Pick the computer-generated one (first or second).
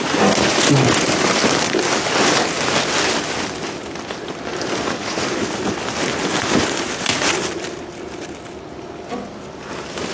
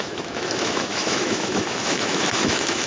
second